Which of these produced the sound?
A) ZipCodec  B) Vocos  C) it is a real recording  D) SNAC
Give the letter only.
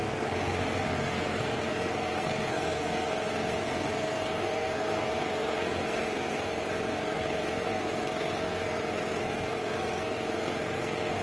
D